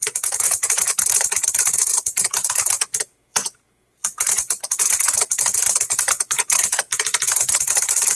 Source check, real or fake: fake